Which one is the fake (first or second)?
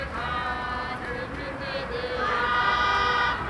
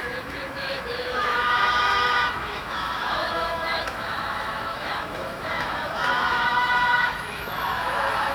second